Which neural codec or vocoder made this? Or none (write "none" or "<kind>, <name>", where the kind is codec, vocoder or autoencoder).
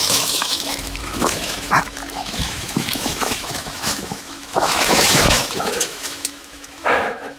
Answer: autoencoder, DAC-VAE